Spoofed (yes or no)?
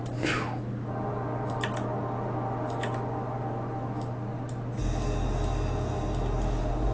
no